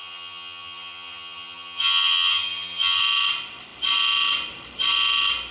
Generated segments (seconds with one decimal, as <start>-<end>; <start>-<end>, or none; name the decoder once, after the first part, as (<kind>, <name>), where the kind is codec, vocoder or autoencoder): 0.0-3.0 (vocoder, HiFi-GAN)